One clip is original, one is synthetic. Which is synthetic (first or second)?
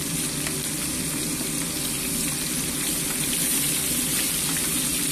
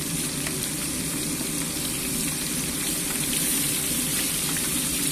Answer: second